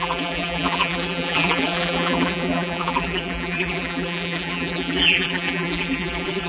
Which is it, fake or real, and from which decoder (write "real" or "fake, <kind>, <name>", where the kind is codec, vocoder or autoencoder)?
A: fake, vocoder, BigVGAN v2